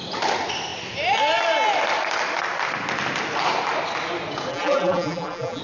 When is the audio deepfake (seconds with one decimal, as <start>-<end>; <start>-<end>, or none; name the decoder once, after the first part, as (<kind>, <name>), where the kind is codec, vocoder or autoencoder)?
4.5-5.6 (vocoder, BigVGAN v2)